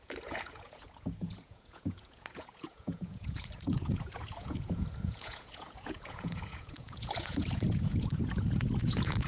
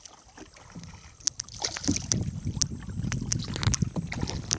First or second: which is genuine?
second